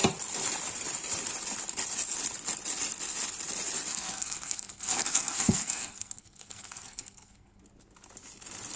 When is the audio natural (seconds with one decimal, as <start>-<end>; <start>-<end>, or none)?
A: 0.0-3.9; 7.6-8.8